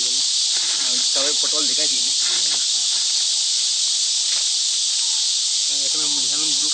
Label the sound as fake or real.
real